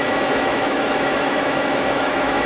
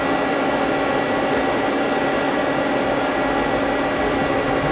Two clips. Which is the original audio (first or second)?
second